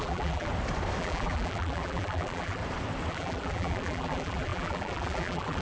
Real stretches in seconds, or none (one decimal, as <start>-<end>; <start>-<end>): 0.5-1.0; 2.6-3.1